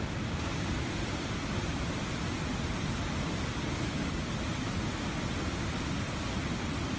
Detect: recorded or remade recorded